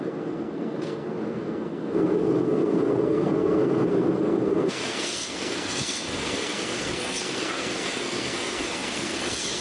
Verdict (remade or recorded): remade